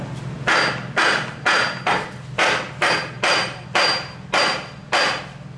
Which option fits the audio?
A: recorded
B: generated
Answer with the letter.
A